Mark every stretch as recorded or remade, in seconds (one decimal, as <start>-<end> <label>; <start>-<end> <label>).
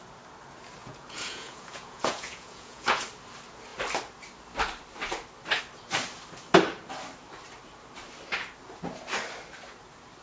0.0-0.8 recorded; 0.8-3.0 remade; 3.0-10.2 recorded